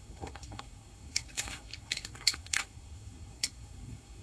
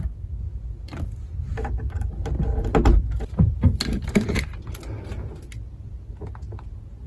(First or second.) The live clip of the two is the second